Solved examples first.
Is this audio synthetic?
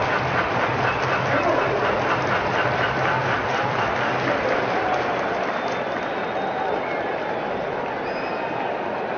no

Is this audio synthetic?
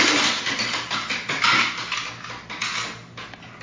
no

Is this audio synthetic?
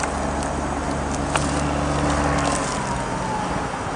no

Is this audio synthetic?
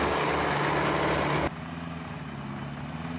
no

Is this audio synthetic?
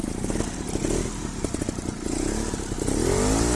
no